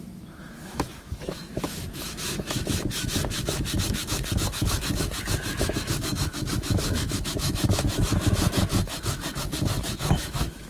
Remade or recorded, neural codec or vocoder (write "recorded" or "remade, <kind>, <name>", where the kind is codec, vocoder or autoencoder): remade, autoencoder, DAC-VAE